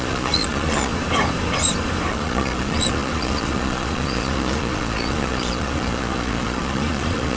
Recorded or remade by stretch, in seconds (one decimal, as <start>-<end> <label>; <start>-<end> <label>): 0.0-0.9 remade; 0.9-2.1 recorded; 2.1-7.4 remade

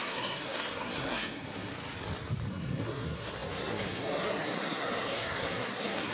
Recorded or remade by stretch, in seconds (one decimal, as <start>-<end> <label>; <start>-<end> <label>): 0.0-1.7 remade; 1.7-2.5 recorded; 2.5-6.1 remade

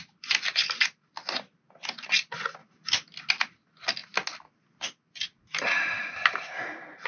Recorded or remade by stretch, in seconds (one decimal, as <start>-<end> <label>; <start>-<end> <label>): 0.0-7.1 recorded